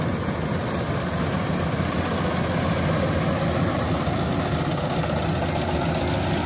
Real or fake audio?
real